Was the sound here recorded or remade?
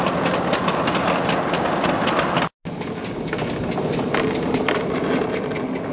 recorded